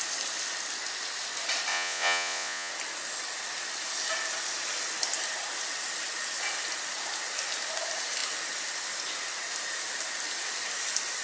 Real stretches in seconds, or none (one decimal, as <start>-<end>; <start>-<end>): 0.0-1.7; 2.7-11.2